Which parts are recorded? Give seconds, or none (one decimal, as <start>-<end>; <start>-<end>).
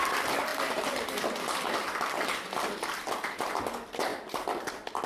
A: none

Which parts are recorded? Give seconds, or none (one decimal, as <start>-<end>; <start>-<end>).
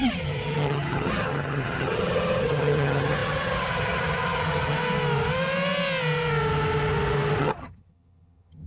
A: 4.8-7.4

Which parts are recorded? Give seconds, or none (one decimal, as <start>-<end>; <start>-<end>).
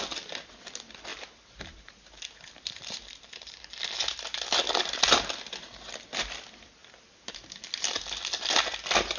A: 0.0-1.1; 3.6-6.8; 7.3-9.2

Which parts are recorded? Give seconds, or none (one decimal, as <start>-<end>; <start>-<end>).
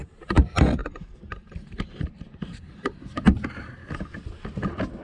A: 0.0-0.8; 3.2-5.0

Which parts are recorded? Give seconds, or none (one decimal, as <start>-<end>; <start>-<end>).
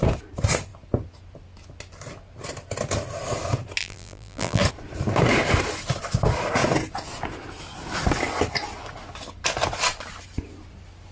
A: 0.0-3.8; 4.6-11.1